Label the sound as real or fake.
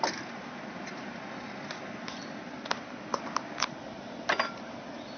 real